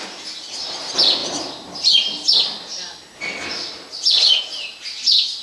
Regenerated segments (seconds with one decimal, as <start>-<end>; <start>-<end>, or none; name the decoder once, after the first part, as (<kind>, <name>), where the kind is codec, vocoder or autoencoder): none